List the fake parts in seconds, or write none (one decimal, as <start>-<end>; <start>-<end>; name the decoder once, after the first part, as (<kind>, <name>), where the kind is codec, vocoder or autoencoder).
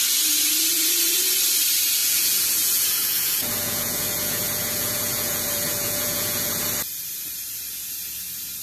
2.0-6.6 (vocoder, Vocos)